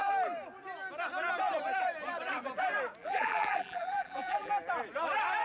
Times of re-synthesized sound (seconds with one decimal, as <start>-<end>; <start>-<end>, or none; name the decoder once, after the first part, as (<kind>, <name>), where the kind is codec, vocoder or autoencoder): 3.0-4.5 (vocoder, BigVGAN v2)